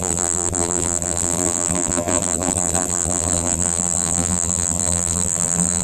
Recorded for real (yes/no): no